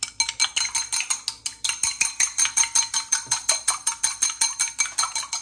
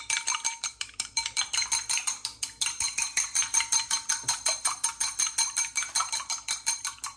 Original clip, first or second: first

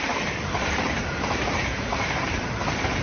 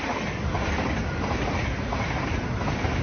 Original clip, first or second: second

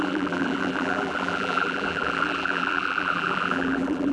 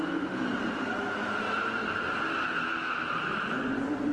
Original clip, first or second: second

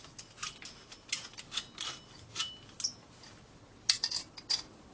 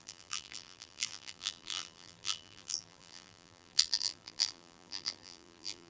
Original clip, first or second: first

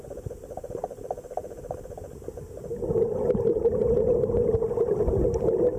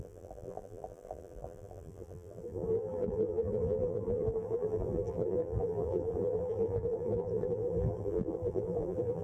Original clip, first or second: first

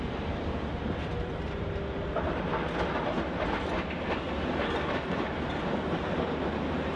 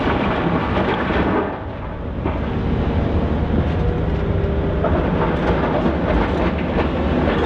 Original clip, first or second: second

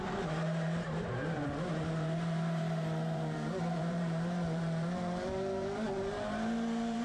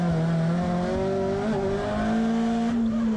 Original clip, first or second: second